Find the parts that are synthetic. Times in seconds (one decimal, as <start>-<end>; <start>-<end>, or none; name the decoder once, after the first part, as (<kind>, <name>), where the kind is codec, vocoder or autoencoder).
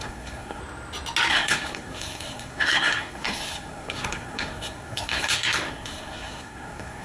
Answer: 0.0-0.6 (codec, SNAC); 1.3-7.0